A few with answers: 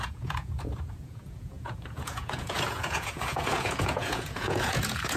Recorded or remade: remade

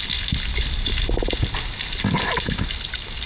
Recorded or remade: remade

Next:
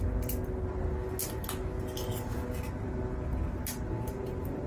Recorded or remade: recorded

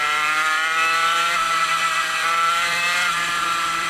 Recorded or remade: remade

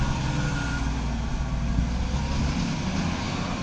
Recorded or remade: recorded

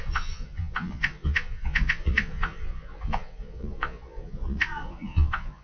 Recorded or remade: remade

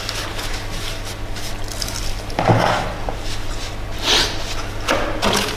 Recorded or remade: recorded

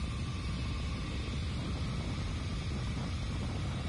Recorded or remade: recorded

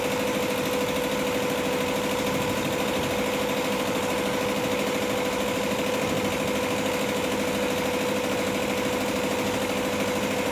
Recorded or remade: recorded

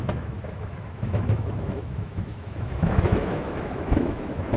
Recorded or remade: remade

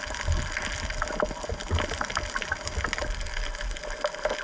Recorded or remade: recorded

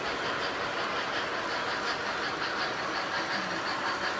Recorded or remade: recorded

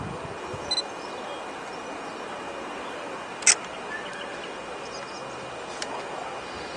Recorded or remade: recorded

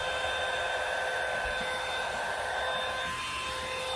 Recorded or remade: recorded